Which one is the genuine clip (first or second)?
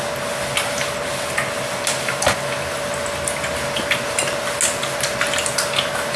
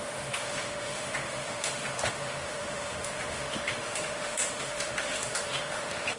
first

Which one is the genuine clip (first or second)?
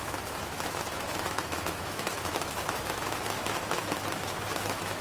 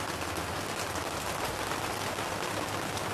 second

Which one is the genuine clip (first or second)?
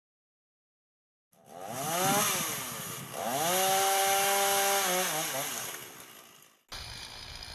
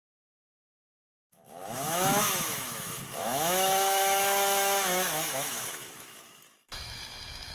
first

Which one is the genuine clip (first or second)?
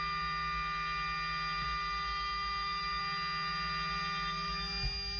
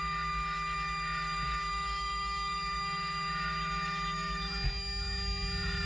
first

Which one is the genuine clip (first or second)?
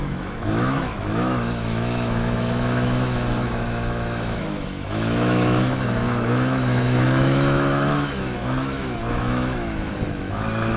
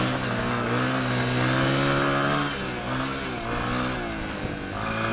second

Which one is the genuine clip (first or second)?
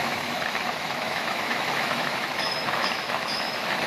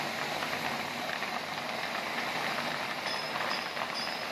second